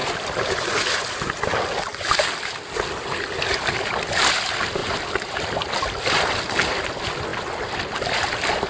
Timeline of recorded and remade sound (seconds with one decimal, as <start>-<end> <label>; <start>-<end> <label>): 0.0-0.7 remade; 0.7-8.7 recorded